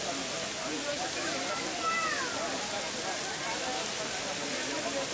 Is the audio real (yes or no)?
yes